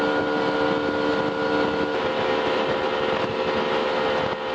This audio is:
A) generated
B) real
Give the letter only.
B